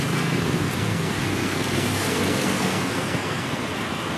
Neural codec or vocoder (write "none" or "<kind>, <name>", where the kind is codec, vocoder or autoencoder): codec, SNAC